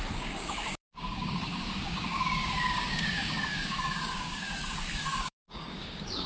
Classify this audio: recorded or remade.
remade